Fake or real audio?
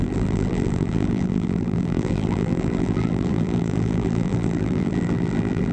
fake